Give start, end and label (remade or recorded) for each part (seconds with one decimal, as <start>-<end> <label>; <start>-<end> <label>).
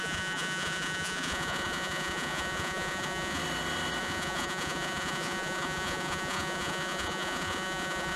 0.0-3.4 remade; 3.4-4.0 recorded; 4.0-8.2 remade